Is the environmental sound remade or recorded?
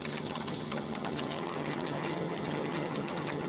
remade